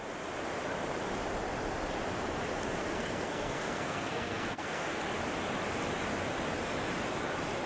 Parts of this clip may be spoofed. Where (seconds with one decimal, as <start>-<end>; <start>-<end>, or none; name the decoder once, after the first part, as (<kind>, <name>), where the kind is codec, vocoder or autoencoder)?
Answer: 2.8-5.0 (codec, SNAC)